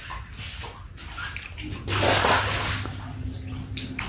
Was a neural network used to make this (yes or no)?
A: no